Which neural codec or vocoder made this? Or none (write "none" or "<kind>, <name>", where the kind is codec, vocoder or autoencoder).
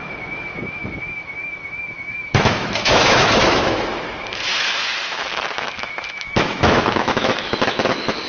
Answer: autoencoder, DAC-VAE